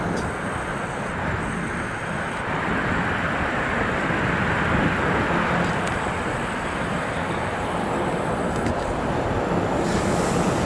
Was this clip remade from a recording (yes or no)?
no